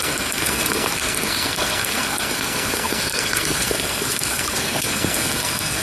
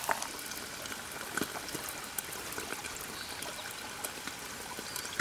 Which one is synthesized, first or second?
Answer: first